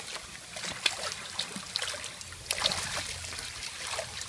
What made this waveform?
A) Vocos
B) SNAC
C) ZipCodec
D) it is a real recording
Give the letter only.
D